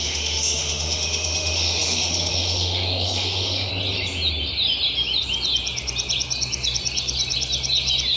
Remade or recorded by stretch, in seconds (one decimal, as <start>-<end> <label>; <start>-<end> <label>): 0.0-3.7 remade; 3.7-8.2 recorded